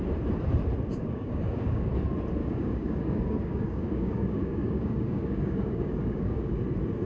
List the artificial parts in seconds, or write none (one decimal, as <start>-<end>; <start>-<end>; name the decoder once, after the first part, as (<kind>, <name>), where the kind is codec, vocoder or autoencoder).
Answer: 0.9-1.9 (codec, DAC); 2.4-6.6